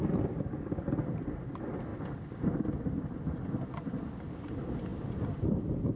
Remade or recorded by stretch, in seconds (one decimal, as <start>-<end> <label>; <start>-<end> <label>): 0.0-6.0 recorded